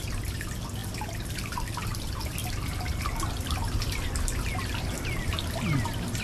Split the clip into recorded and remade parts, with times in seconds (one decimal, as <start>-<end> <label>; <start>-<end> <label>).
0.0-6.2 recorded